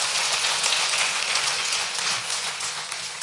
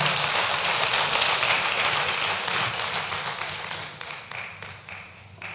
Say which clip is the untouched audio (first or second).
second